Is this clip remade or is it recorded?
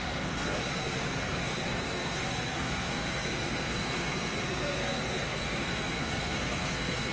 remade